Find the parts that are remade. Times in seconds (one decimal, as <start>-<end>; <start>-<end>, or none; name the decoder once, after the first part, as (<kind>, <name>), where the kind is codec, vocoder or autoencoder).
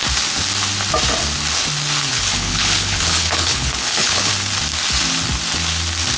2.1-4.3 (codec, HILCodec)